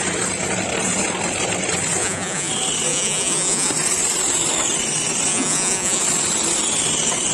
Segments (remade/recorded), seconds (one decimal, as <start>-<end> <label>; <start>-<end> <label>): 0.0-2.0 recorded; 2.0-2.5 remade; 2.5-2.9 recorded; 2.9-3.7 remade; 3.7-5.3 recorded; 5.3-6.0 remade; 6.0-7.3 recorded